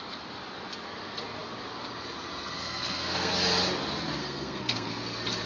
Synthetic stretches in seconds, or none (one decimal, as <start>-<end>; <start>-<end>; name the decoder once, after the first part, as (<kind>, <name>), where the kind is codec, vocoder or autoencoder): 2.6-3.3 (codec, SNAC); 4.2-4.9